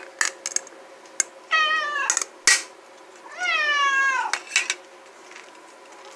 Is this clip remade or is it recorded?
recorded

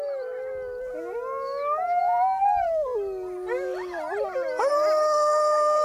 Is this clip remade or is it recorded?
recorded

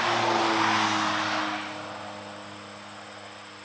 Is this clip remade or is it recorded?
recorded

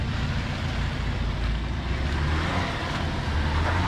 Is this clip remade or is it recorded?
recorded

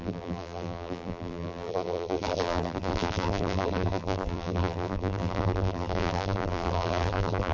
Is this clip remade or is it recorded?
remade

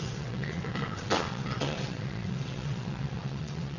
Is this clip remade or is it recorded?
remade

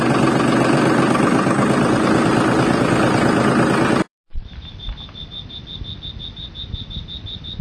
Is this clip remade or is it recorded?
remade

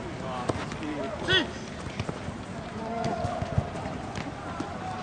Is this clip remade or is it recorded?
recorded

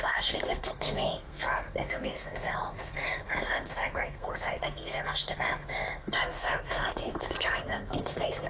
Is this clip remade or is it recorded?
remade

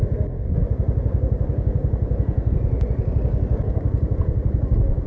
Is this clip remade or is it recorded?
recorded